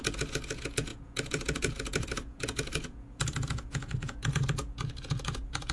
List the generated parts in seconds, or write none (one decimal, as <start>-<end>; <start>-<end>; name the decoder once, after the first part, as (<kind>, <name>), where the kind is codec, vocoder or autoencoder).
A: 0.0-5.7 (vocoder, Vocos)